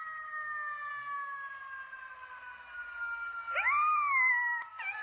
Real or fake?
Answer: real